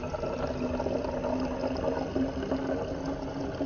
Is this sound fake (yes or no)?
no